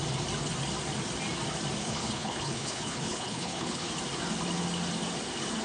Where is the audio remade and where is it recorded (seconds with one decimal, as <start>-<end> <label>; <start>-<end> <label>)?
0.0-1.8 recorded; 1.8-3.9 remade; 3.9-5.6 recorded